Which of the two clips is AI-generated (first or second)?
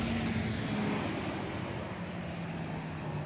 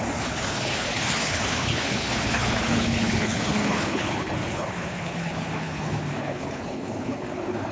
second